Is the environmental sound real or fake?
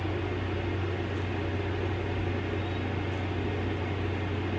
real